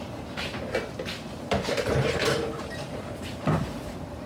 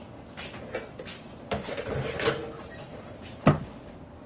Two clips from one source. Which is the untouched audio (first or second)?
second